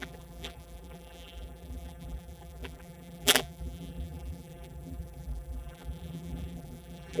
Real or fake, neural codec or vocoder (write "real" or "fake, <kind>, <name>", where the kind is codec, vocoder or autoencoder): fake, vocoder, BigVGAN v2